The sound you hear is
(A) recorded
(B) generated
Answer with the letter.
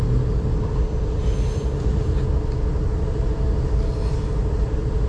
A